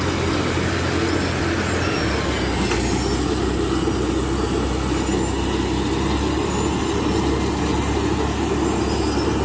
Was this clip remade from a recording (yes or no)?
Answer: no